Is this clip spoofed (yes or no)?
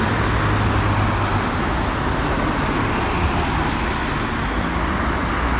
no